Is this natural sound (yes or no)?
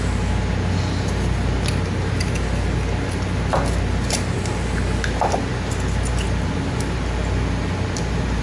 yes